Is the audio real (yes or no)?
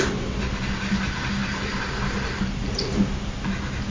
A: yes